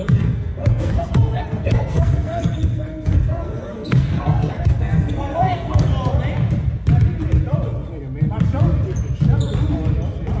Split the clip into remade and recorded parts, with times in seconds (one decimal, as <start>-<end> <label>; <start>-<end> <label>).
0.0-5.9 remade; 5.9-10.4 recorded